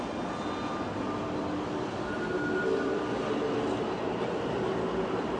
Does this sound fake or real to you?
real